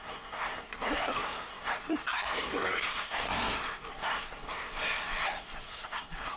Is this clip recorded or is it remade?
remade